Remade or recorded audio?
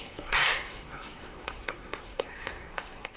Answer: remade